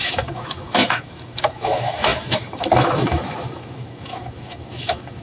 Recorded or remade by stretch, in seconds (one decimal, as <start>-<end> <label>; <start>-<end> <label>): 0.0-5.2 remade